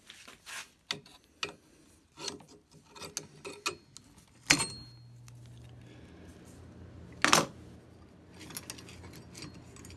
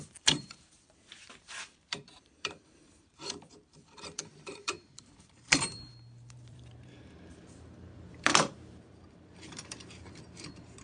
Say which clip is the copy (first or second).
second